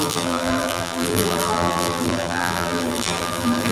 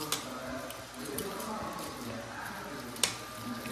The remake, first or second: first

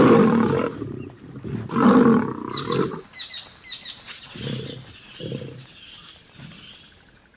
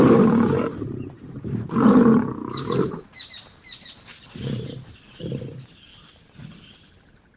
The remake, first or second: second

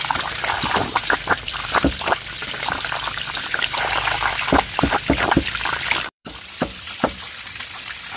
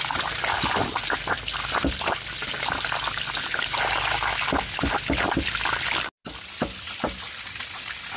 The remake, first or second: first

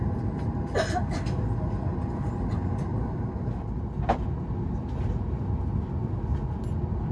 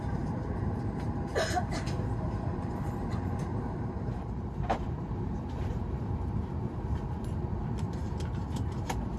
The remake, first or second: second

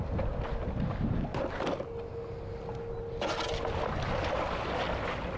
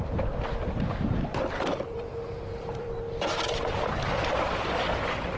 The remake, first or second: second